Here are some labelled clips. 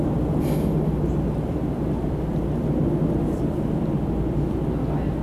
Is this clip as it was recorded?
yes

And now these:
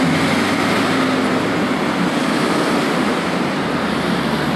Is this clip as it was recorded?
yes